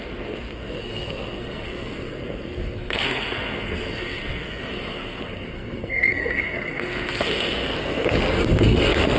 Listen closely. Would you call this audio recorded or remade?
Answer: remade